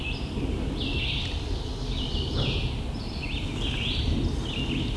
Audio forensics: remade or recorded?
recorded